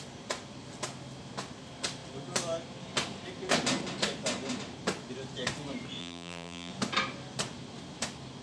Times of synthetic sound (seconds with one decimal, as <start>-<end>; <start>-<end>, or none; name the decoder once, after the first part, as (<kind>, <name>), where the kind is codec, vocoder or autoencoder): 6.0-6.7 (vocoder, BigVGAN v2)